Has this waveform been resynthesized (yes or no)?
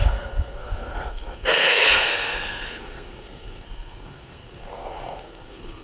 yes